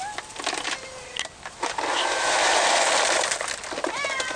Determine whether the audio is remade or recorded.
recorded